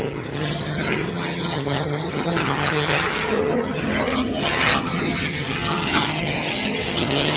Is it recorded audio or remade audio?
remade